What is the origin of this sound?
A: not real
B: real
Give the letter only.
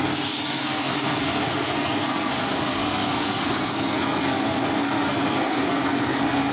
A